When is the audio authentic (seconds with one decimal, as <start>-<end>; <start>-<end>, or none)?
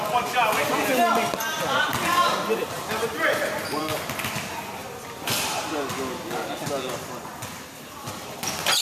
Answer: 0.0-2.6; 3.8-4.8; 5.4-8.8